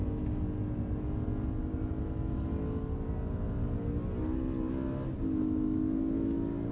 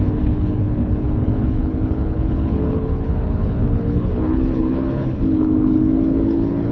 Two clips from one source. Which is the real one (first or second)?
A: first